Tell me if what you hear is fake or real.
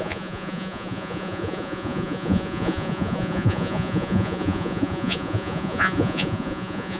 fake